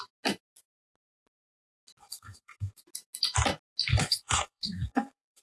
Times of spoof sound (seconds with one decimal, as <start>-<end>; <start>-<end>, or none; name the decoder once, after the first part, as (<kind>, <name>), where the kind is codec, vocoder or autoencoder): 2.0-2.8 (codec, SNAC); 3.9-5.4